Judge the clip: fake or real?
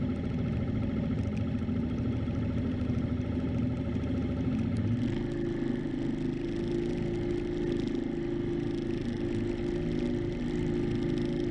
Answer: real